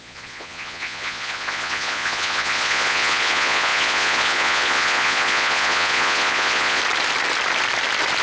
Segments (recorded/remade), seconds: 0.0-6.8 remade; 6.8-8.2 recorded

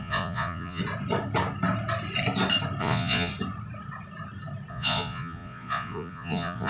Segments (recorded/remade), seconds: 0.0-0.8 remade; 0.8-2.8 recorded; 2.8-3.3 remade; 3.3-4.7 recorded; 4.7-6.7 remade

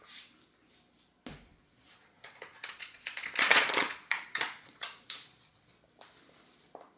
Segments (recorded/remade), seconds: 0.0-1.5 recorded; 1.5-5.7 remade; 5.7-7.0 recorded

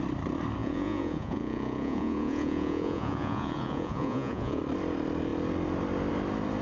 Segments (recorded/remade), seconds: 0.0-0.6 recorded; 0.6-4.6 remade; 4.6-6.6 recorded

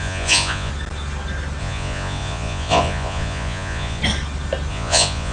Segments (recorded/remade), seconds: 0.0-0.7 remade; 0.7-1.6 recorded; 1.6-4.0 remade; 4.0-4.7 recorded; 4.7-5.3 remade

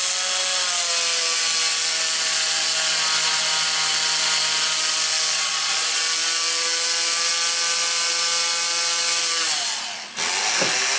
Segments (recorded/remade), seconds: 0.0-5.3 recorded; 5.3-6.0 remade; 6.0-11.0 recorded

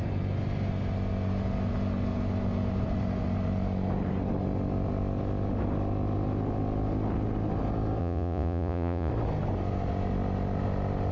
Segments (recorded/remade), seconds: 0.0-8.0 recorded; 8.0-9.1 remade; 9.1-11.1 recorded

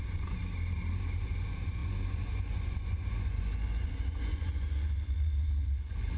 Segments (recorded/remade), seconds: 0.0-0.4 remade; 0.4-1.2 recorded; 1.2-6.2 remade